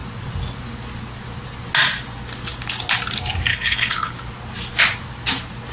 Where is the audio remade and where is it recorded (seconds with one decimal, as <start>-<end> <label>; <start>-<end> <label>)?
0.0-3.5 recorded; 3.5-4.1 remade; 4.1-5.7 recorded